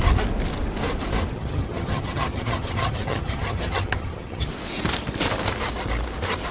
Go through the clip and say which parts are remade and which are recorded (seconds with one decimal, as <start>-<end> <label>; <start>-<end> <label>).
0.0-1.3 recorded; 1.3-4.5 remade; 4.5-6.5 recorded

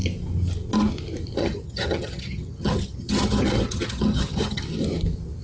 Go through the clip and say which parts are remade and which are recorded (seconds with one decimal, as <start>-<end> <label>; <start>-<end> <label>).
0.0-1.4 recorded; 1.4-4.6 remade; 4.6-5.4 recorded

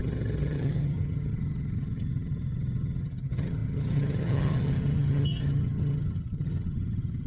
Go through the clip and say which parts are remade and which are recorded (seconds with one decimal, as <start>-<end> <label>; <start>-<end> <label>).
0.0-7.3 remade